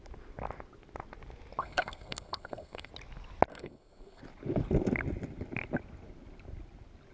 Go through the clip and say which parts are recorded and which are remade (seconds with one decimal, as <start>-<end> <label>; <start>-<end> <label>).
0.0-1.6 recorded; 1.6-2.9 remade; 2.9-3.5 recorded; 3.5-4.2 remade; 4.2-7.1 recorded